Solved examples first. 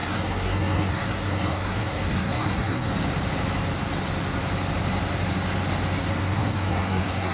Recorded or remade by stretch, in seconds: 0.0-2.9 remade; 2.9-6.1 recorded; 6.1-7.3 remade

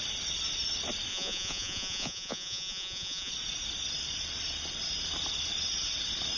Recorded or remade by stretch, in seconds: 0.0-1.1 recorded; 1.1-3.3 remade; 3.3-6.4 recorded

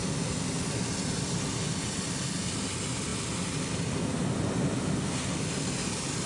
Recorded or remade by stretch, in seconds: 0.0-6.3 recorded

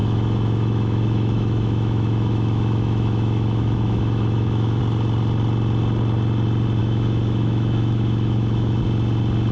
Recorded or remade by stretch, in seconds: 0.0-4.8 remade; 4.8-6.8 recorded; 6.8-8.8 remade; 8.8-9.5 recorded